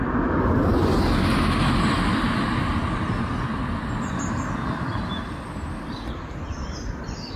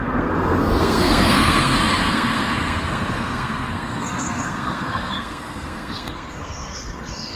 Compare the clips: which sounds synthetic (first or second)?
second